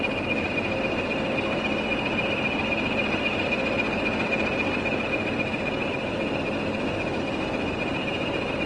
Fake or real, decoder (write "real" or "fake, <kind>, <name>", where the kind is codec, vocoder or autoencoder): real